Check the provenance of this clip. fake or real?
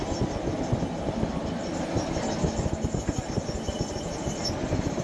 real